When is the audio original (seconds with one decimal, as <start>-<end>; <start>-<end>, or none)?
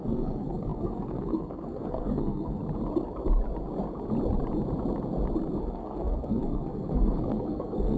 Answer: 2.6-5.6